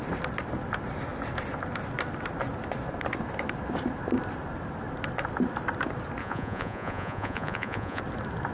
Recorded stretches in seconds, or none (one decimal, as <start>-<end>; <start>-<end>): 0.0-6.2; 8.0-8.5